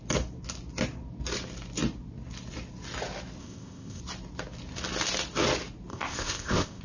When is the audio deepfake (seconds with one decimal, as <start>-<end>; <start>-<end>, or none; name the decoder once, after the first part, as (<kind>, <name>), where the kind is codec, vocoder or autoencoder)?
3.4-4.0 (codec, ZipCodec); 5.9-6.8